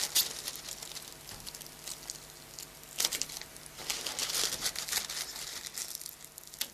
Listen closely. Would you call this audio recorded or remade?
recorded